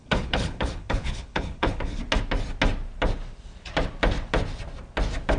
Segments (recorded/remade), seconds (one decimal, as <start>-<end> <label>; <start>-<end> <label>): 0.0-2.0 remade; 2.0-5.4 recorded